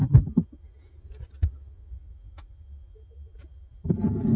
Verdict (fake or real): real